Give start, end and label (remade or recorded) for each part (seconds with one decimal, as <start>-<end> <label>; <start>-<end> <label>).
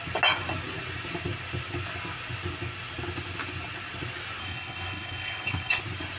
0.0-4.4 recorded; 4.4-5.8 remade; 5.8-6.2 recorded